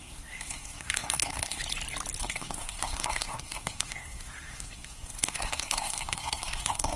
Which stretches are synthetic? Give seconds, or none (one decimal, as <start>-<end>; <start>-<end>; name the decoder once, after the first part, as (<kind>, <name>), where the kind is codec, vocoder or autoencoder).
0.0-1.6 (codec, SNAC); 2.2-7.0